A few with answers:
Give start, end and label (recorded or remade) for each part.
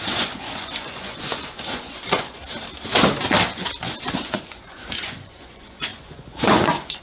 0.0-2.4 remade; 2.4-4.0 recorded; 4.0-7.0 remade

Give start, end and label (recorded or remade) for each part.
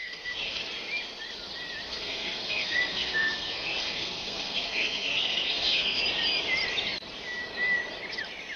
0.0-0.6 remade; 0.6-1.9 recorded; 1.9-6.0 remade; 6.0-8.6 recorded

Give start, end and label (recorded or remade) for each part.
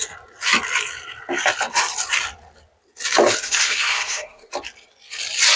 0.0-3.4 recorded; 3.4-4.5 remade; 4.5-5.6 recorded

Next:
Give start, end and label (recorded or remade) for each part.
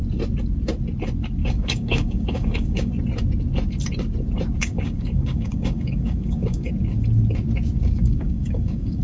0.0-1.4 recorded; 1.4-2.9 remade; 2.9-4.6 recorded; 4.6-6.7 remade; 6.7-7.8 recorded; 7.8-9.0 remade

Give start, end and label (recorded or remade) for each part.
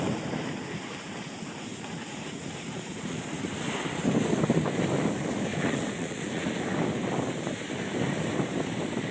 0.0-1.7 recorded; 1.7-3.5 remade; 3.5-5.5 recorded; 5.5-6.6 remade; 6.6-9.1 recorded